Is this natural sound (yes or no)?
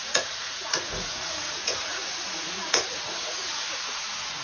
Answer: no